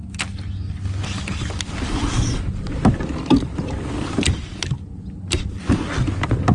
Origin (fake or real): real